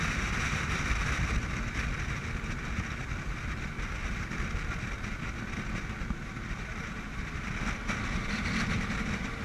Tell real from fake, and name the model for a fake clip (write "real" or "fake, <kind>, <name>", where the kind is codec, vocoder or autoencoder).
real